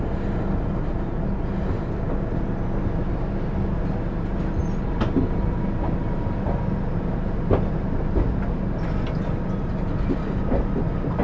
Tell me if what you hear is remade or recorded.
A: recorded